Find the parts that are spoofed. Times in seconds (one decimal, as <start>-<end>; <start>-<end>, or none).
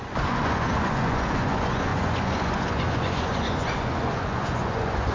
0.0-5.1